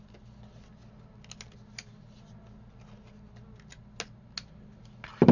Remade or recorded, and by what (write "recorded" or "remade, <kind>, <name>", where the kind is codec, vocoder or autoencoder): recorded